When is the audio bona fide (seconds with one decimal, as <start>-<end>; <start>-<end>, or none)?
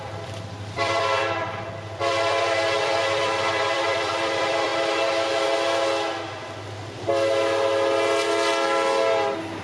4.7-9.6